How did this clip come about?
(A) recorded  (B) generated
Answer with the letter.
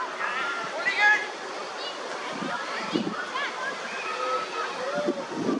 A